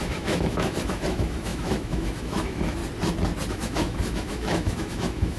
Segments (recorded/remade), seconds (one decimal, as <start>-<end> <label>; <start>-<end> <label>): 0.0-2.8 remade; 2.8-3.5 recorded; 3.5-5.4 remade